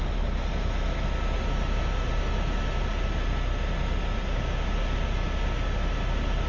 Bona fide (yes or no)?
yes